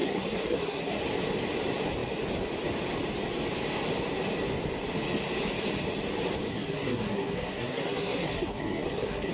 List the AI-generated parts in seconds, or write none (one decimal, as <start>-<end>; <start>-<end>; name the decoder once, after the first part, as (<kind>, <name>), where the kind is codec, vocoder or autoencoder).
0.0-1.0 (codec, SNAC); 6.5-9.3